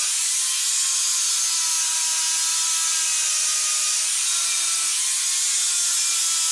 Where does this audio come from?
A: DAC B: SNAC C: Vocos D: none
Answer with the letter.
D